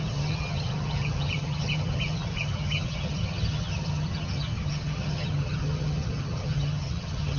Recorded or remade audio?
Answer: remade